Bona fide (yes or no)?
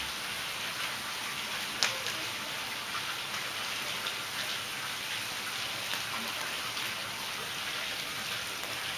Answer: yes